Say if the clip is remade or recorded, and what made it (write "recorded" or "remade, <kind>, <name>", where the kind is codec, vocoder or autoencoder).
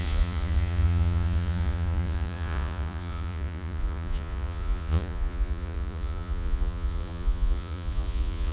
remade, vocoder, Vocos